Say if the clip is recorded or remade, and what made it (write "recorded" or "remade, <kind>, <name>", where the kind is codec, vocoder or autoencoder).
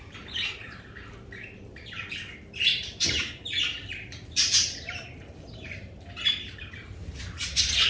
remade, vocoder, BigVGAN v2